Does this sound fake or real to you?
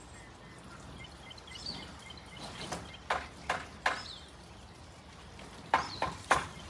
real